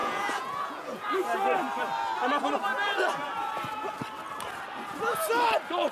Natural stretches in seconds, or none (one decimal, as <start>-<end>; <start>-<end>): 1.1-5.9